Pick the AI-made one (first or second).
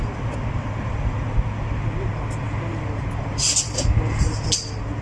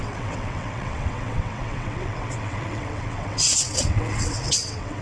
second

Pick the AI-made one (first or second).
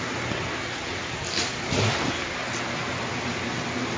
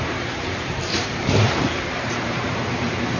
second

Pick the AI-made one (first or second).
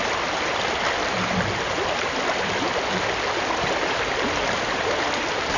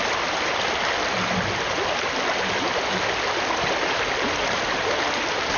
first